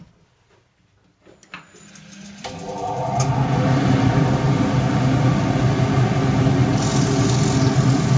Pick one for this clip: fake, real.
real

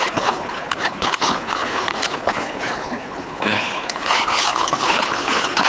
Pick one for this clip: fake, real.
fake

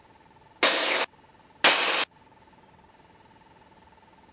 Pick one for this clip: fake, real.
real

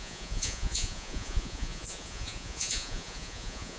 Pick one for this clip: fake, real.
fake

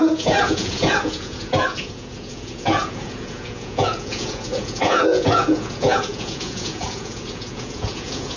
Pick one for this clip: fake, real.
fake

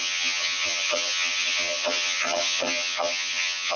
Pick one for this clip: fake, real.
fake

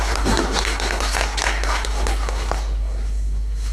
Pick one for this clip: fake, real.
fake